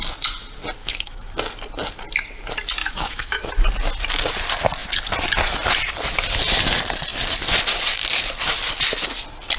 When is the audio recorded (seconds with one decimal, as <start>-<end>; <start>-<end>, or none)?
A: 0.0-0.8; 1.3-2.8; 3.5-9.6